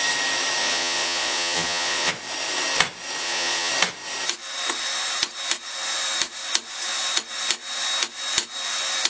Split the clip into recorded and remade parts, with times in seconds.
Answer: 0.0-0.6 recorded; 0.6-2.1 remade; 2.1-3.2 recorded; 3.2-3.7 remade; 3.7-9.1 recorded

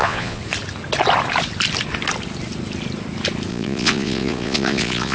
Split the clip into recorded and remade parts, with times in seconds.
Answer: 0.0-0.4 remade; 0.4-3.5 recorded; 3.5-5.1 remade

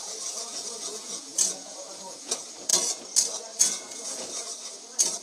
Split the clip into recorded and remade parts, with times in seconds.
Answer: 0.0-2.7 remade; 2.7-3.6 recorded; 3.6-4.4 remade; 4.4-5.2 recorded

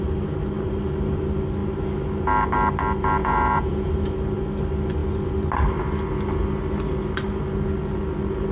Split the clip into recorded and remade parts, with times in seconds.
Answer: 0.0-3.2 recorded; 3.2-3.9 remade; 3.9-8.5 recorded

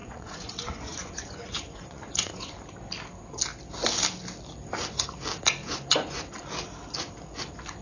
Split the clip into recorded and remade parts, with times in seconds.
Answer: 0.0-2.5 remade; 2.5-5.6 recorded; 5.6-6.3 remade; 6.3-7.8 recorded